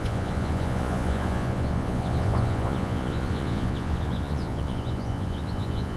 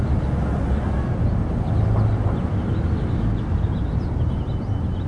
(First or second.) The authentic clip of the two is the second